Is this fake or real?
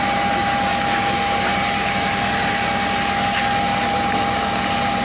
real